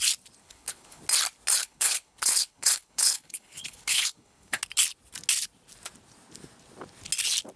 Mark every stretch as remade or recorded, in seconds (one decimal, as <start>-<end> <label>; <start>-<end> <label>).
0.0-0.4 recorded; 0.4-1.0 remade; 1.0-1.6 recorded; 1.6-4.6 remade; 4.6-7.6 recorded